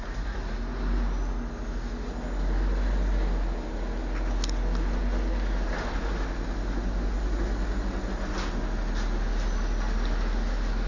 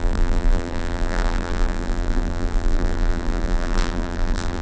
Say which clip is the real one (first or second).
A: first